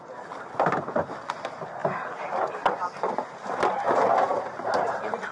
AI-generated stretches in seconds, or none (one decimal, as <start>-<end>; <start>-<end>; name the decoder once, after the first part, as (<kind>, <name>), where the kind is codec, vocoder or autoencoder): 4.3-5.3 (vocoder, BigVGAN v2)